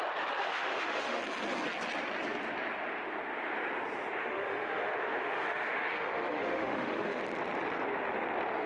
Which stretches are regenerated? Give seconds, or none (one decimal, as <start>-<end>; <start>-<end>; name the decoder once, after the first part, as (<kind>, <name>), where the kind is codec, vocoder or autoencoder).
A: 0.4-1.2 (autoencoder, DAC-VAE); 4.2-7.2